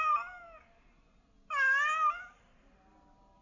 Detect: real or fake real